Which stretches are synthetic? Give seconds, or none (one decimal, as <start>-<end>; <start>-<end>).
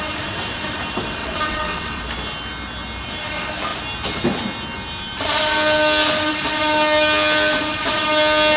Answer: 1.2-2.0